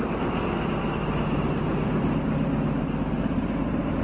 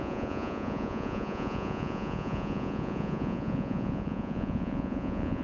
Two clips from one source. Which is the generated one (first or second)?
second